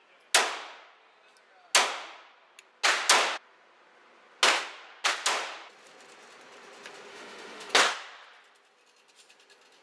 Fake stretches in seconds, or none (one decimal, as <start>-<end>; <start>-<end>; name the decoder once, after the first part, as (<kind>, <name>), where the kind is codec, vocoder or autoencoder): 7.1-7.7 (autoencoder, DAC-VAE)